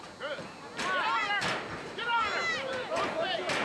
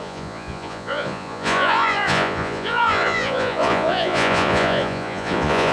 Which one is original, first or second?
first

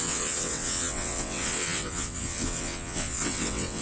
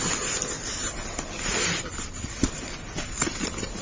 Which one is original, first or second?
second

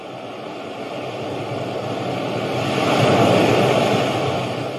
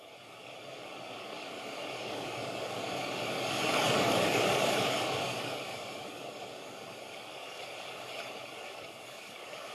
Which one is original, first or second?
first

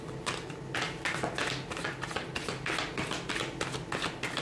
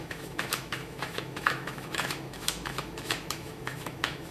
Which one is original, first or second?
first